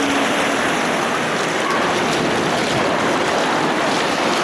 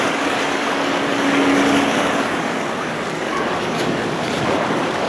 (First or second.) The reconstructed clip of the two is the second